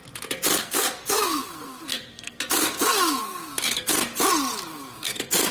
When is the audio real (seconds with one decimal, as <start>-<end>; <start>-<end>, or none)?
0.0-0.6; 3.9-4.7